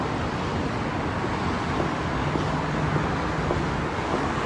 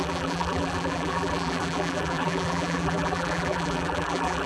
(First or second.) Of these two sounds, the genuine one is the first